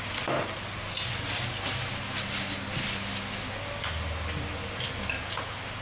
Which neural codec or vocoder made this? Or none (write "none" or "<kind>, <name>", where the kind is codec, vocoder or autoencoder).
none